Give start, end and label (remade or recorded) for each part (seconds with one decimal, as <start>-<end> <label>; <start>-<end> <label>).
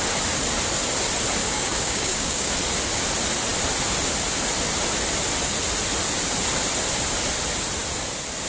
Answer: 0.0-1.4 recorded; 1.4-2.5 remade; 2.5-8.5 recorded